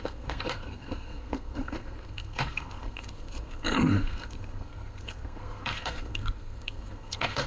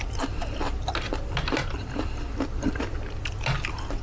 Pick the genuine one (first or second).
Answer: second